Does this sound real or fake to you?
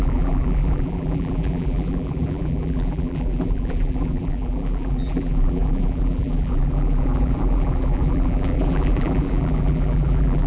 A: fake